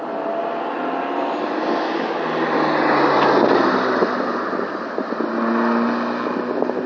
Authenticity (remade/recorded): recorded